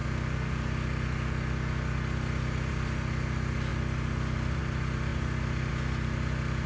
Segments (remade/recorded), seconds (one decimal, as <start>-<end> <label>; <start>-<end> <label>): 0.0-6.7 recorded